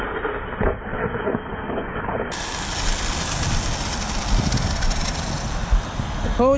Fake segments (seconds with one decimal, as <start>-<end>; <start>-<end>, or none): 1.5-2.1